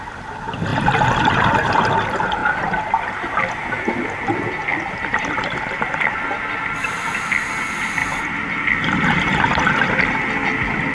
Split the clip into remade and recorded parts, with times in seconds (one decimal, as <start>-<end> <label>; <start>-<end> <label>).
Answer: 0.0-4.7 recorded; 4.7-6.3 remade; 6.3-8.0 recorded; 8.0-10.1 remade; 10.1-10.9 recorded